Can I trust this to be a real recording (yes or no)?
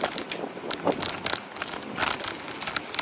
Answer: yes